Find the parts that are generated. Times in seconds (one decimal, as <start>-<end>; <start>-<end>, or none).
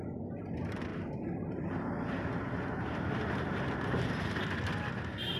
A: 0.9-4.1